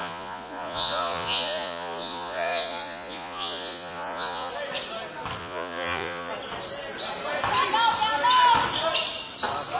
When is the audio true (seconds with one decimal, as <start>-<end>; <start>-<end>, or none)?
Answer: 4.5-5.4; 6.3-9.8